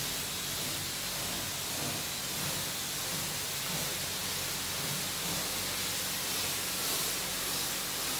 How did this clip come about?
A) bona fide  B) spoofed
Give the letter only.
A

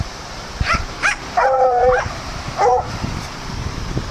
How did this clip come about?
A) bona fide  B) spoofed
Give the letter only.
B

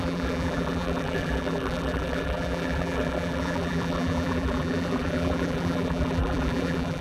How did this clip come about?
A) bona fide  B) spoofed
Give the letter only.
B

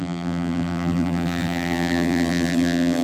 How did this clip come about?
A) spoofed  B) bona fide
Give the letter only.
A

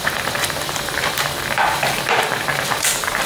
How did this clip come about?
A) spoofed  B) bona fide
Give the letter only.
A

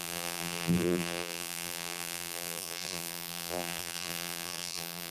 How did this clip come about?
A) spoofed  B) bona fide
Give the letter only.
A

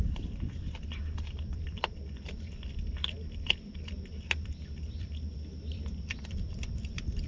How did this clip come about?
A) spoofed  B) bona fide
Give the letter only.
A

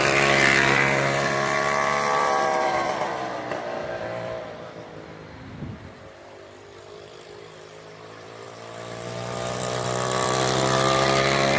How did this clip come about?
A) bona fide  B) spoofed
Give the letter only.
B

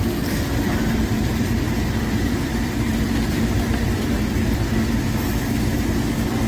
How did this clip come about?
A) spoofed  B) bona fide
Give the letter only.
A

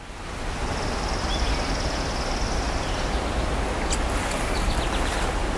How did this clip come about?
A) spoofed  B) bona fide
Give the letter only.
B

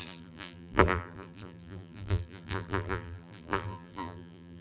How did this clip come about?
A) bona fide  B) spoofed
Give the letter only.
B